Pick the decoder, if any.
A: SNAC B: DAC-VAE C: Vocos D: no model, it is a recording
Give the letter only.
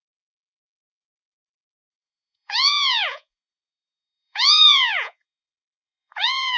C